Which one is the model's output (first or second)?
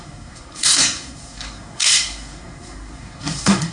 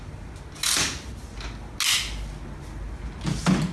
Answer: first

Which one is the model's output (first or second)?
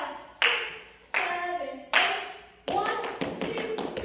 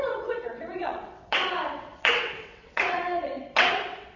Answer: second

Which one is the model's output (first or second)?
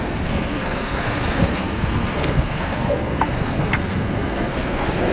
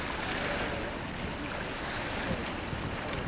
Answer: first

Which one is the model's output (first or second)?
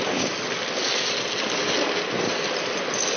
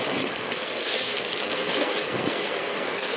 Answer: second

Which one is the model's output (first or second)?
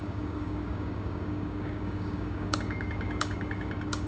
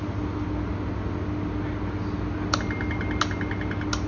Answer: first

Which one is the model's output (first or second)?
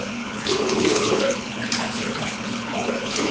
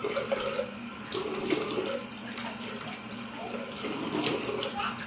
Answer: first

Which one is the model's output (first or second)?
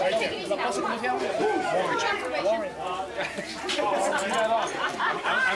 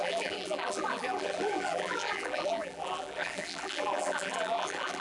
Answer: second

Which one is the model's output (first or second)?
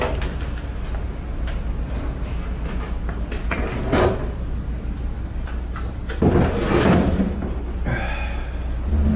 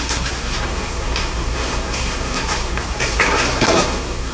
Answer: second